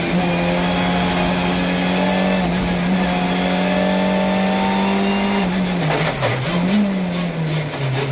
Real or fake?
real